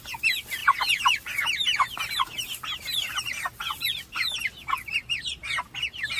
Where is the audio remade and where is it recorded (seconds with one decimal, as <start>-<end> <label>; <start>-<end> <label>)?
0.0-6.2 recorded

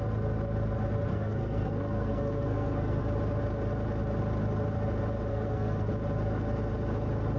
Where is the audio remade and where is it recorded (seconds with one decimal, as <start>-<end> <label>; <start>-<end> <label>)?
0.0-1.1 recorded; 1.1-3.0 remade; 3.0-5.3 recorded; 5.3-5.9 remade; 5.9-7.4 recorded

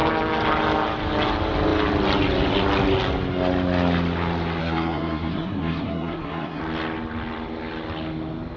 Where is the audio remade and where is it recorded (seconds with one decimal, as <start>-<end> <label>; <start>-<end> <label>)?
0.0-4.6 recorded; 4.6-6.6 remade; 6.6-8.6 recorded

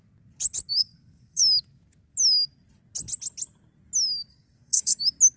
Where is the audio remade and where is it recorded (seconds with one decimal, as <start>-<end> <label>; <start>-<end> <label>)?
0.0-0.8 recorded; 0.8-1.4 remade; 1.4-4.3 recorded; 4.3-5.0 remade; 5.0-5.4 recorded

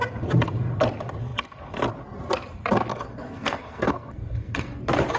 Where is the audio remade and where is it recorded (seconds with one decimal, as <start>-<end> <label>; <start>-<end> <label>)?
0.0-2.9 recorded; 2.9-4.8 remade; 4.8-5.2 recorded

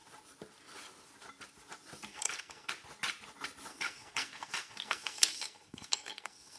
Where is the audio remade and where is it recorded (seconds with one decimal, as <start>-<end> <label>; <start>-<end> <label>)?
0.0-2.1 recorded; 2.1-2.7 remade; 2.7-3.7 recorded; 3.7-6.6 remade

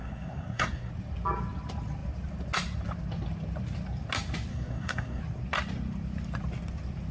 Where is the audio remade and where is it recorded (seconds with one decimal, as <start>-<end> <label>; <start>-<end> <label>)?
0.0-0.9 remade; 0.9-4.5 recorded; 4.5-5.2 remade; 5.2-7.1 recorded